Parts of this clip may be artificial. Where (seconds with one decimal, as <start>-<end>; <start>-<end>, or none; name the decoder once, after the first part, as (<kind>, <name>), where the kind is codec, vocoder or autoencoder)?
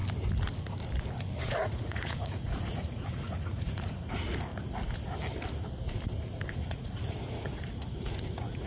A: 1.5-4.5 (vocoder, Vocos); 6.5-8.7